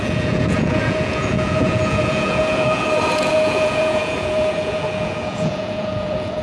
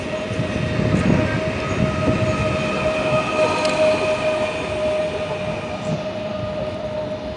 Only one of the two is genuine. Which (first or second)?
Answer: second